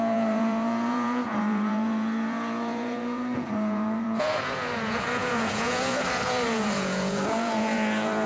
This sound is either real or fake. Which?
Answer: fake